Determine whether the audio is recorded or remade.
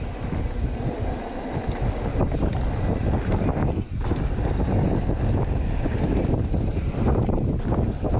recorded